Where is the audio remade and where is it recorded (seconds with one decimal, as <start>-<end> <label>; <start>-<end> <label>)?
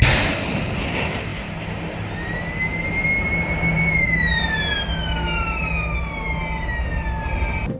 0.0-7.8 recorded